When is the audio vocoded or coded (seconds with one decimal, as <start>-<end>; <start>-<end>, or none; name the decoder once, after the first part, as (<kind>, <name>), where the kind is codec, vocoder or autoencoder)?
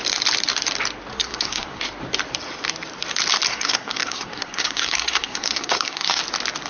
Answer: 1.1-1.8 (codec, SNAC); 3.5-6.2